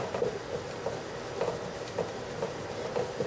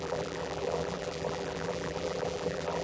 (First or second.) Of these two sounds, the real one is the first